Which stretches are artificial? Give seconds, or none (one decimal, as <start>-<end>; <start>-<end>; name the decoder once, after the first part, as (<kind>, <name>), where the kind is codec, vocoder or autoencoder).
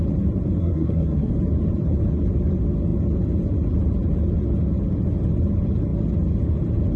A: 0.6-1.3 (codec, SNAC)